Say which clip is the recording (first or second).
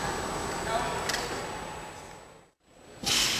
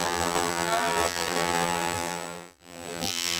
first